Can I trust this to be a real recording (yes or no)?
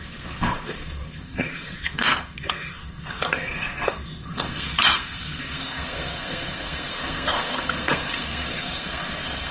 no